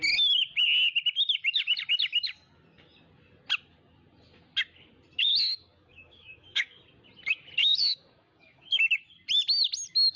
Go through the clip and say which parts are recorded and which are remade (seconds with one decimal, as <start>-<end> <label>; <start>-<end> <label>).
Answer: 0.0-5.5 recorded; 5.5-6.8 remade; 6.8-7.6 recorded; 7.6-9.0 remade; 9.0-10.2 recorded